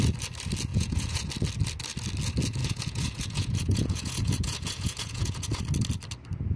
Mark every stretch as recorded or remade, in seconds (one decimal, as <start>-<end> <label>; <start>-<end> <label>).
0.0-0.7 recorded; 0.7-1.3 remade; 1.3-2.6 recorded; 2.6-5.6 remade; 5.6-6.6 recorded